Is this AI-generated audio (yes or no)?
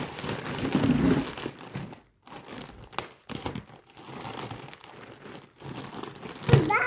no